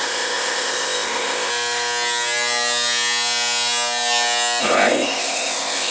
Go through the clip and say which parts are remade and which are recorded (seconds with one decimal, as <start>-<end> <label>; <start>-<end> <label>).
0.0-1.5 remade; 1.5-4.6 recorded; 4.6-5.9 remade